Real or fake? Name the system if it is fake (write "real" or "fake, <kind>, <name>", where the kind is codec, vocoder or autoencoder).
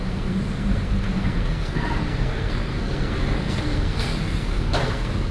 fake, codec, SNAC